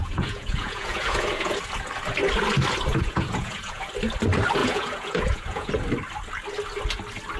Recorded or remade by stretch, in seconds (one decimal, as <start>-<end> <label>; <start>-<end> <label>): 0.0-1.6 remade; 1.6-2.9 recorded; 2.9-3.9 remade; 3.9-4.6 recorded; 4.6-5.7 remade; 5.7-7.4 recorded